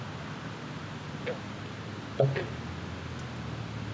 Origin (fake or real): real